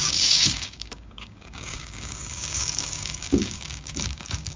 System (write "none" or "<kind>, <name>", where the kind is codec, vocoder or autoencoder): codec, DAC